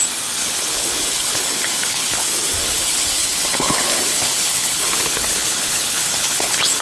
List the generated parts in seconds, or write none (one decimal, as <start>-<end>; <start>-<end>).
0.4-2.2; 2.6-6.8